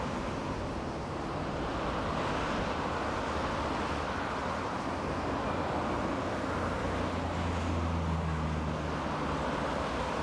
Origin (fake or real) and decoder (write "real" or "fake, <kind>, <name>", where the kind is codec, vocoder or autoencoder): real